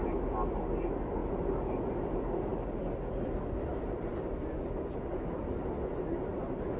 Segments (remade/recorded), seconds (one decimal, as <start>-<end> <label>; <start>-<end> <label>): 0.0-6.8 recorded